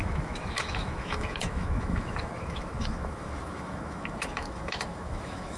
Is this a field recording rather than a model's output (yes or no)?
no